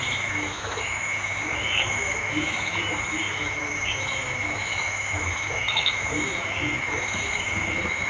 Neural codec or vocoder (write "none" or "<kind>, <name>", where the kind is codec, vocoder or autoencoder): autoencoder, DAC-VAE